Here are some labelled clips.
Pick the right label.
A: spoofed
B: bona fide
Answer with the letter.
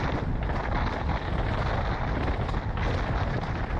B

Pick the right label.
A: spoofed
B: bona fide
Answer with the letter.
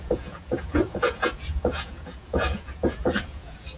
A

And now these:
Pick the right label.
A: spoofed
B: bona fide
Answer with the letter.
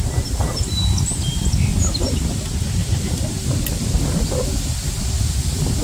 B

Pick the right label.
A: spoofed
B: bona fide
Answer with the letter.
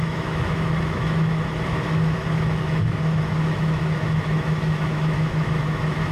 A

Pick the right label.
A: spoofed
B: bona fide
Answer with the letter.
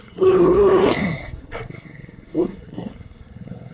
A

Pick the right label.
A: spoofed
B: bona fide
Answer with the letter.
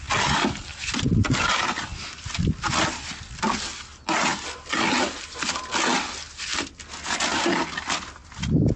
B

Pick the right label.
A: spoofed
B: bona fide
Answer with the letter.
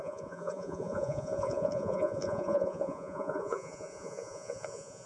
A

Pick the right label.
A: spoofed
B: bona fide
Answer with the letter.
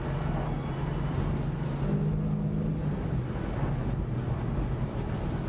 B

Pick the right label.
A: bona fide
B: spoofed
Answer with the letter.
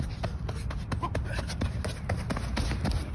A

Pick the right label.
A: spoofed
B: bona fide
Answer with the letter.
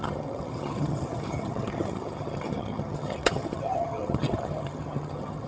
A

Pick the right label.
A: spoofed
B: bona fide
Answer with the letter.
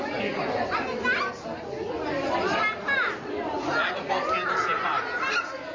B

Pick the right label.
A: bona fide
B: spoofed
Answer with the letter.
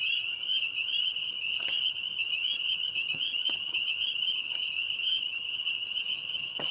B